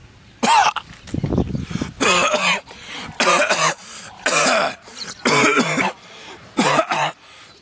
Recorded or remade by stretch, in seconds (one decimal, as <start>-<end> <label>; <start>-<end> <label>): 0.0-3.8 recorded; 3.8-6.7 remade; 6.7-7.6 recorded